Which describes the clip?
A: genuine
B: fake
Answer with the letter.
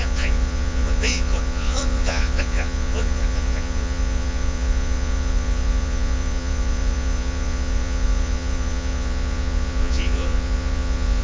B